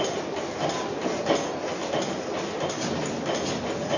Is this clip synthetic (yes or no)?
no